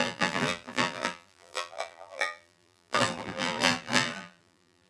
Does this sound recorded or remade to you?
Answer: remade